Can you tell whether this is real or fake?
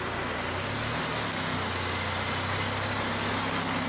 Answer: real